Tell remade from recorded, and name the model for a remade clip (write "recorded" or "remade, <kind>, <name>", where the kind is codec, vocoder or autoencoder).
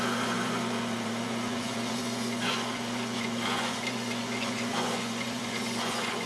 remade, vocoder, Vocos